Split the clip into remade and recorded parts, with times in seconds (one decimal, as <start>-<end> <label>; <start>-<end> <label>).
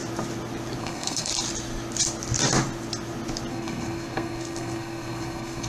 0.0-0.8 recorded; 0.8-1.3 remade; 1.3-3.5 recorded; 3.5-5.7 remade